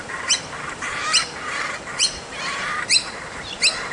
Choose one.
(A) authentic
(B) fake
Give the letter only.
B